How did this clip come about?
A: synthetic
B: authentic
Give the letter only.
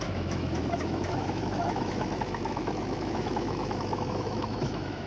A